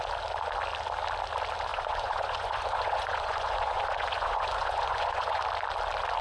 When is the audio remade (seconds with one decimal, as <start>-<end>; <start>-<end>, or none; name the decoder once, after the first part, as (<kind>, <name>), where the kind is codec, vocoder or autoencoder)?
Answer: 1.7-5.4 (vocoder, Vocos)